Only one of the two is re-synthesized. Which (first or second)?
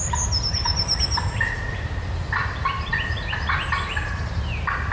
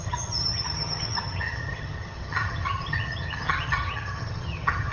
second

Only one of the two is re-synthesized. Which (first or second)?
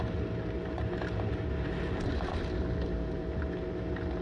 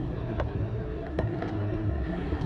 second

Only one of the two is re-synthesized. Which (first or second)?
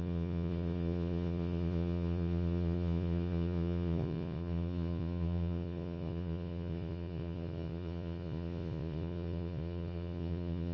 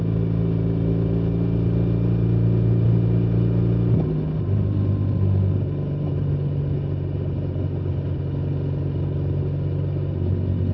first